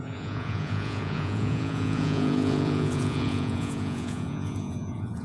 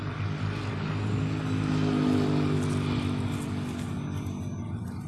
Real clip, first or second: second